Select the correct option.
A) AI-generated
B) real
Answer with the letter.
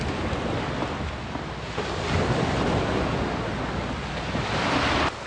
B